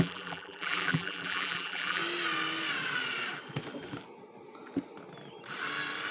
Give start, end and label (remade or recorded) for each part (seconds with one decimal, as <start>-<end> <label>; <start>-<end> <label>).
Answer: 0.0-2.0 remade; 2.0-6.1 recorded